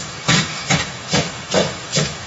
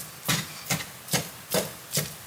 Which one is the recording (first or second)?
second